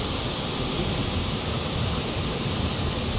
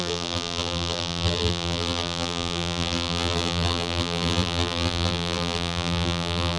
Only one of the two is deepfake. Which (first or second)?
second